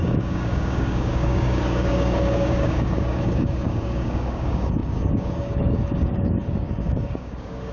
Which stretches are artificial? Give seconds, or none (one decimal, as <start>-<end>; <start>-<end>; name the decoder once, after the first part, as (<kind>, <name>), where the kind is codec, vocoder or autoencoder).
0.0-7.7 (codec, DAC)